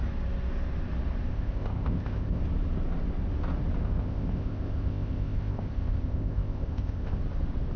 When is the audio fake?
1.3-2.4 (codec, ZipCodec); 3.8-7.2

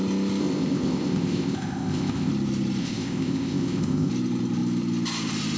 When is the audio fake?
0.4-2.3 (codec, ZipCodec); 2.8-4.1

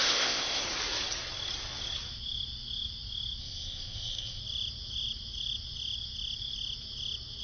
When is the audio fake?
0.0-0.6 (codec, ZipCodec); 3.4-4.4